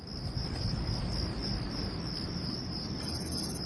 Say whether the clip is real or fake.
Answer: real